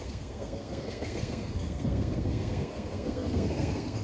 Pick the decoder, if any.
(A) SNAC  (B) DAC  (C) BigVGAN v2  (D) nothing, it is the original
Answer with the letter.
A